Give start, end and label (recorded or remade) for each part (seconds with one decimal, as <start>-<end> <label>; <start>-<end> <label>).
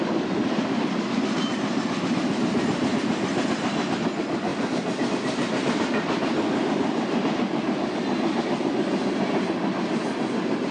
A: 0.0-10.7 recorded